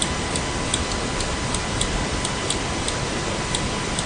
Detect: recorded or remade recorded